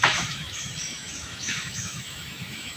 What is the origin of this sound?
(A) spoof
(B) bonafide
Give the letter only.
A